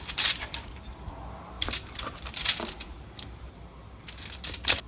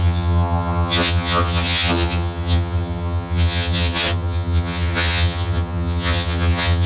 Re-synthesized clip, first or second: second